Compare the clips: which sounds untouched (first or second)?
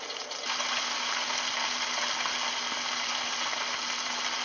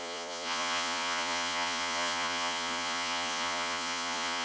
first